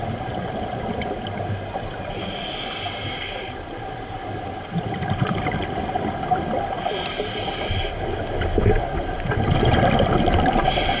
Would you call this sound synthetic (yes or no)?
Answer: no